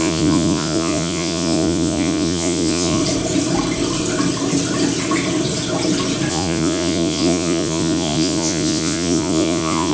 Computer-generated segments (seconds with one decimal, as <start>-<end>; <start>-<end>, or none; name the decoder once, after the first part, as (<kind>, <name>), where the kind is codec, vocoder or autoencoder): 0.0-3.0 (vocoder, Vocos); 6.3-9.9